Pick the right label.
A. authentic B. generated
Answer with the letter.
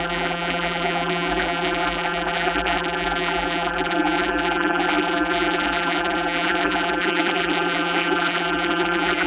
B